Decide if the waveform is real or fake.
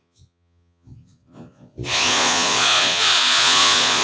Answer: fake